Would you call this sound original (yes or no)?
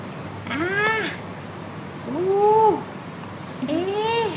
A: no